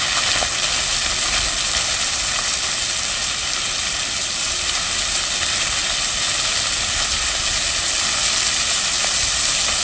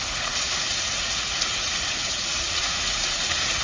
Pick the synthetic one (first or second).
second